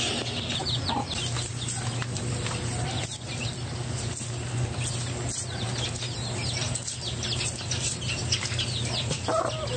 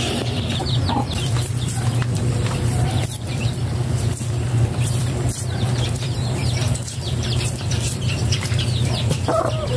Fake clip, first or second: second